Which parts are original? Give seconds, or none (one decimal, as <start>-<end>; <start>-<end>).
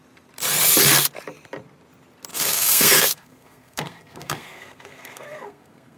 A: 0.0-2.3